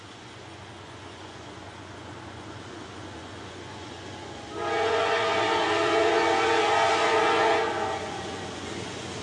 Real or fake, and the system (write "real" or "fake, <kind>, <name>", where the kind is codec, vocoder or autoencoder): fake, vocoder, Vocos